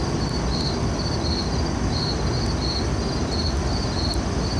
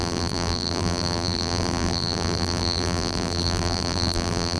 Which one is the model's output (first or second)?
second